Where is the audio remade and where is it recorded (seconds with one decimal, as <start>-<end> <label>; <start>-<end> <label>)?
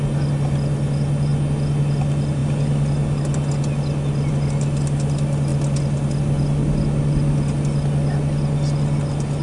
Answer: 0.0-9.4 recorded